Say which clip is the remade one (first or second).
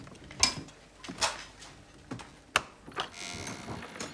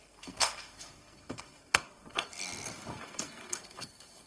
second